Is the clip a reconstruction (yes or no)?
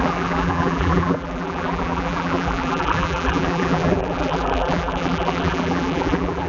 yes